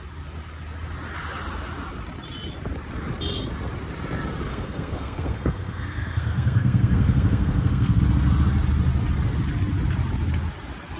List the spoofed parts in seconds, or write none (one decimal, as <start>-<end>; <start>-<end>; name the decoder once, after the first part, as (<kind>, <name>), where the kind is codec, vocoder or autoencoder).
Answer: 4.5-8.0 (codec, SNAC)